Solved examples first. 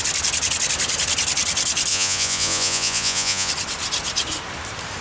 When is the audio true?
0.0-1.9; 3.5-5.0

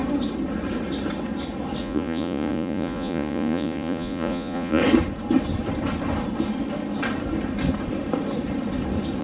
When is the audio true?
0.0-1.8; 4.8-9.2